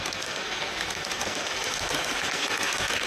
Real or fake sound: fake